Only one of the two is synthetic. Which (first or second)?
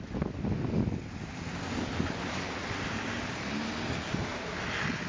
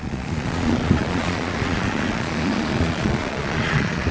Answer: second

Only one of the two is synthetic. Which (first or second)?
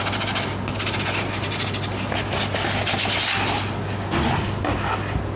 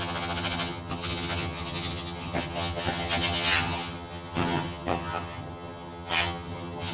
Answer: second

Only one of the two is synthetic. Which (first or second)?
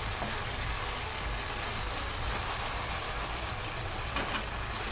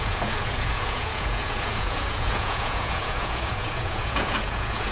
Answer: second